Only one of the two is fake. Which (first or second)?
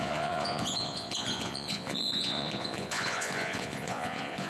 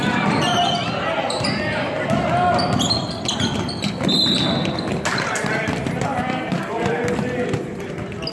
first